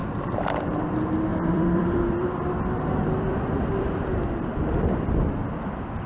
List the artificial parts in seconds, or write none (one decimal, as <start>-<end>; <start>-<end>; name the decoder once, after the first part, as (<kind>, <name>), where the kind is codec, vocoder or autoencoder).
1.3-5.0 (vocoder, BigVGAN v2); 5.4-6.1